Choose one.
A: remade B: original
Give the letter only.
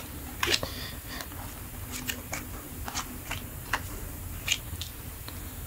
B